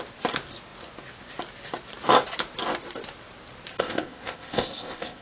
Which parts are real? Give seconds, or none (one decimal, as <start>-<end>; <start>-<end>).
0.0-3.7

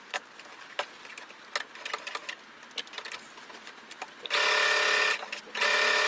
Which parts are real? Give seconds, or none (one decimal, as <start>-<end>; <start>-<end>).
0.0-6.1

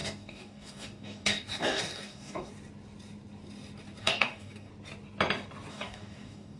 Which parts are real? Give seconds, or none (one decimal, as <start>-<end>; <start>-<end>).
2.5-4.0; 4.7-5.7

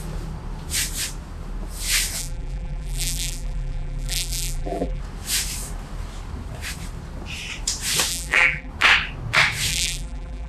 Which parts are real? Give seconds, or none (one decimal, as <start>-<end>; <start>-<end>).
0.0-2.2; 5.0-8.1; 8.7-9.7